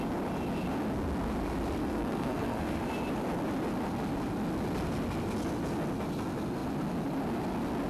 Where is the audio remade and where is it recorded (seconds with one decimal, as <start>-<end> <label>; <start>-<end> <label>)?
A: 0.0-1.8 recorded; 1.8-2.8 remade; 2.8-7.9 recorded